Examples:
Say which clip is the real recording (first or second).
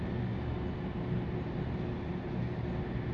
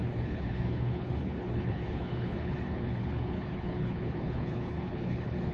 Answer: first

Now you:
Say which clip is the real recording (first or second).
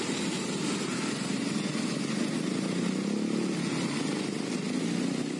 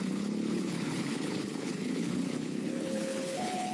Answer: first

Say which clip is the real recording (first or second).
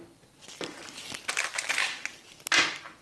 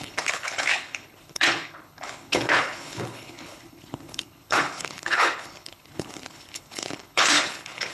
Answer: first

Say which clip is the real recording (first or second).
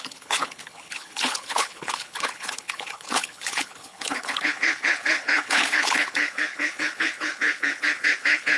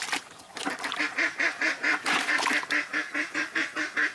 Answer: second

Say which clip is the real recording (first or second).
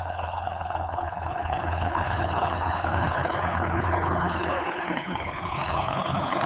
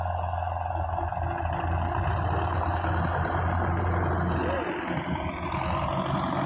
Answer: second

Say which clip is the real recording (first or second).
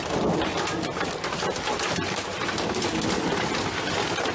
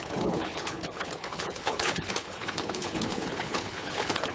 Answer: first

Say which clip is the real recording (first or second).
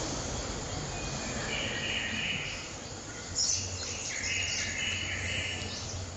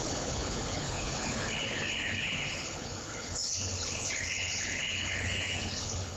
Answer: first